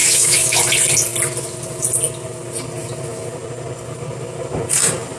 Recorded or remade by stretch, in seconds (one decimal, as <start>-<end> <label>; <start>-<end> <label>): 0.0-0.6 remade; 0.6-5.2 recorded